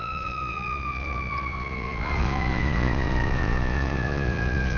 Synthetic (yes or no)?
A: yes